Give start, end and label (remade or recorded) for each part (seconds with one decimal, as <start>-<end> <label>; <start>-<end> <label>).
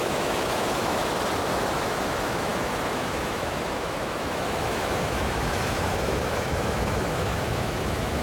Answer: 0.0-1.0 remade; 1.0-1.8 recorded; 1.8-8.2 remade